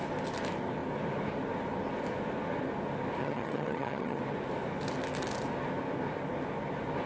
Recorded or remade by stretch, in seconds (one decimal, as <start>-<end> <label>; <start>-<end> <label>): 0.0-3.2 recorded; 3.2-4.2 remade; 4.2-7.1 recorded